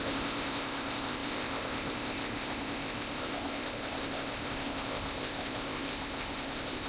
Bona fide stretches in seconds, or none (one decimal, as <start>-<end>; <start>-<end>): none